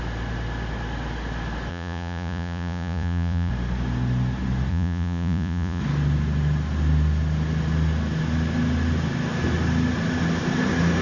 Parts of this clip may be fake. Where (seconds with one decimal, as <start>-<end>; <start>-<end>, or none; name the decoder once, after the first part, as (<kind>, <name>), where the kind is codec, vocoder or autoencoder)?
1.7-3.5 (vocoder, Vocos); 4.7-5.8